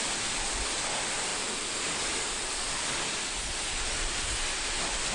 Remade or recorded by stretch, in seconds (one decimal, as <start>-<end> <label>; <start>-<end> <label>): 0.0-5.1 recorded